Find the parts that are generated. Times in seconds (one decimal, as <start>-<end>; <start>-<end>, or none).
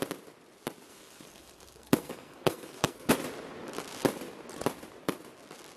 0.9-3.1